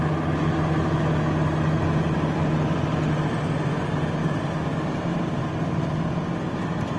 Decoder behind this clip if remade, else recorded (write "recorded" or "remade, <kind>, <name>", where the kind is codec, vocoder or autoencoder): recorded